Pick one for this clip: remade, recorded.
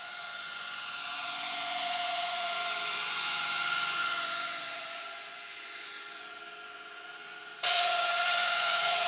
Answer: remade